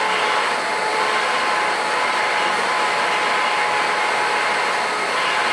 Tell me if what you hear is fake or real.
real